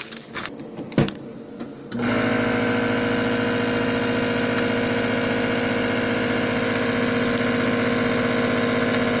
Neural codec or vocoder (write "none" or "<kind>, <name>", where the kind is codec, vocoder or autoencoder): none